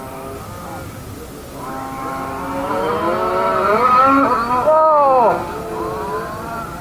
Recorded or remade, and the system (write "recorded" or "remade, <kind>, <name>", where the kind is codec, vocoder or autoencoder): recorded